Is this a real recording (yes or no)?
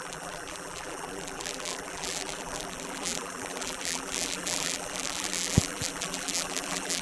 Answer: no